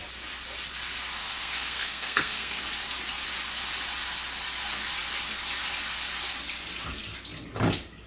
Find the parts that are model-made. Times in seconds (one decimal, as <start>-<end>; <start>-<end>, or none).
1.2-2.6